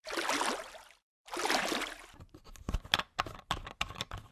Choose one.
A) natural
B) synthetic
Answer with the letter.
A